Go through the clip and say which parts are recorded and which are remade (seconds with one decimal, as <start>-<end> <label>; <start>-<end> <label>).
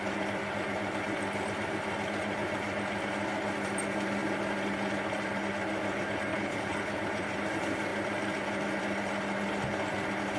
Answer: 0.0-6.3 recorded; 6.3-6.9 remade; 6.9-10.4 recorded